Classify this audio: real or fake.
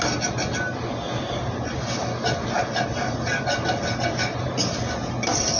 real